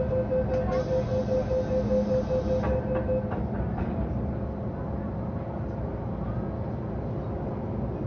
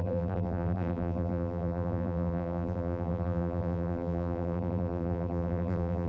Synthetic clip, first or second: second